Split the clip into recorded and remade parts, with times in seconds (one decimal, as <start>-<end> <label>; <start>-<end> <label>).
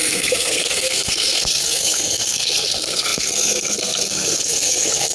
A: 0.0-5.1 remade